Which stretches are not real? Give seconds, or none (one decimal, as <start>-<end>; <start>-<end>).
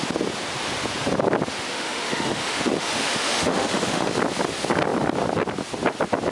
1.7-4.1